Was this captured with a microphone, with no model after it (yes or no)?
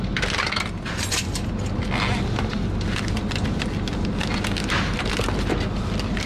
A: yes